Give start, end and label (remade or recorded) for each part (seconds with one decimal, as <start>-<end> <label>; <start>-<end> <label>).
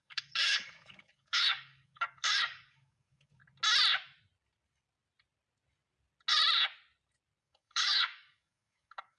0.0-3.4 remade; 3.4-7.4 recorded; 7.4-9.2 remade